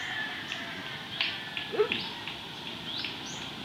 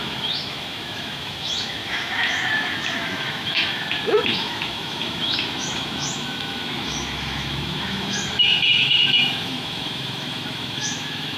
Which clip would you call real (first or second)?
first